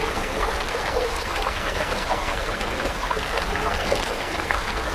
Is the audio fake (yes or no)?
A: yes